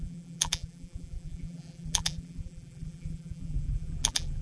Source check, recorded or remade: remade